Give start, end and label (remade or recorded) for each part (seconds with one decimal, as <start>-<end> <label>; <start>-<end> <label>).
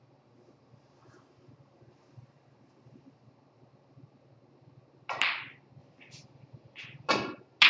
0.0-5.8 recorded; 5.8-7.1 remade; 7.1-7.7 recorded